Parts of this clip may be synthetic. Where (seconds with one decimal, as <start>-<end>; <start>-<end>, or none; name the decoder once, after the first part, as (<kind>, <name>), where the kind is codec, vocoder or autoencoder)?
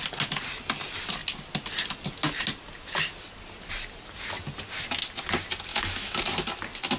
5.7-6.2 (autoencoder, DAC-VAE)